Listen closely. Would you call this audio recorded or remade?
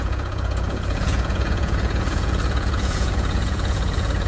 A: remade